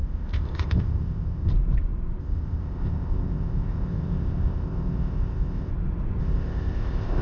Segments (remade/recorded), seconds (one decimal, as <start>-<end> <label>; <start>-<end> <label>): 0.0-1.5 remade; 1.5-2.2 recorded; 2.2-5.7 remade; 5.7-6.2 recorded; 6.2-7.2 remade